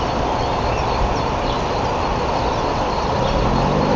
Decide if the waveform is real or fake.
real